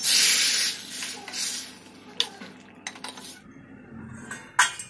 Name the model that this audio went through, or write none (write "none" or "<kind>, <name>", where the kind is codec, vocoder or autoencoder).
none